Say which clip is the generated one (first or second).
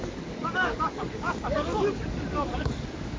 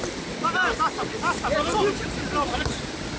first